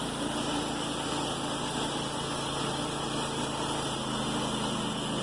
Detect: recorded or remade recorded